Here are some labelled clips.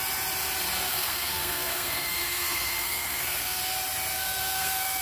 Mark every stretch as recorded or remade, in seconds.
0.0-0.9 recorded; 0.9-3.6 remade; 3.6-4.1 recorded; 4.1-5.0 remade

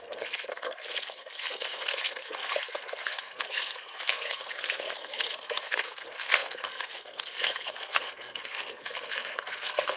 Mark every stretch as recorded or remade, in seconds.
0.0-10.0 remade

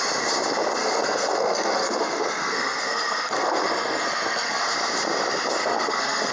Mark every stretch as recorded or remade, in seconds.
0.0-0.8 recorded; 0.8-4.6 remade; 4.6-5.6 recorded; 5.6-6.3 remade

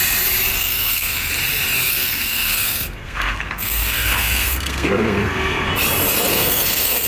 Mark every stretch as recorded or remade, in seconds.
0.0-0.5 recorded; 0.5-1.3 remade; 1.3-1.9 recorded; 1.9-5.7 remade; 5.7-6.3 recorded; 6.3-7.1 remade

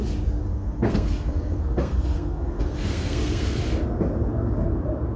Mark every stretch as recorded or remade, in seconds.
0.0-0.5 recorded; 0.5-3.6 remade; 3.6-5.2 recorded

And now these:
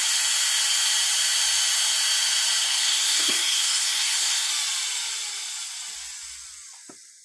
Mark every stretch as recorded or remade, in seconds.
0.0-2.6 recorded; 2.6-4.5 remade; 4.5-7.2 recorded

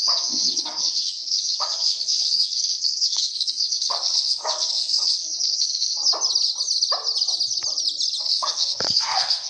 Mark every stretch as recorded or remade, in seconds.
0.0-6.0 remade; 6.0-8.2 recorded; 8.2-9.5 remade

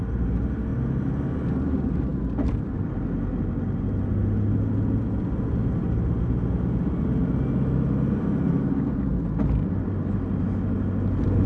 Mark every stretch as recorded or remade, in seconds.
0.0-11.5 recorded